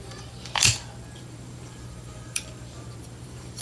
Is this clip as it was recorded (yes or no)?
no